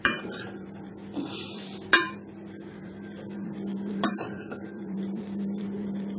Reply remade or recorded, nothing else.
remade